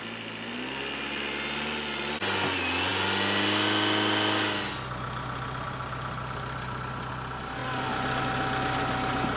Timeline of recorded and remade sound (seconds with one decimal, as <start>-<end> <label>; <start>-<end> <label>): 0.0-9.4 recorded